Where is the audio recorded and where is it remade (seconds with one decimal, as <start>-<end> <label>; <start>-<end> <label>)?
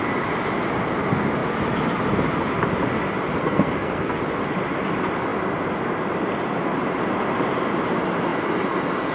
0.0-3.4 recorded; 3.4-4.2 remade; 4.2-9.1 recorded